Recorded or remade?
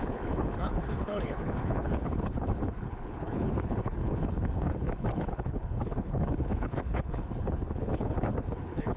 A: remade